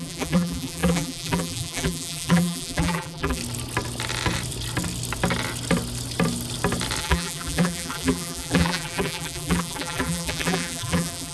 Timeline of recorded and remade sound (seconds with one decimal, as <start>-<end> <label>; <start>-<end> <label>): 0.0-3.4 remade; 3.4-7.0 recorded; 7.0-11.3 remade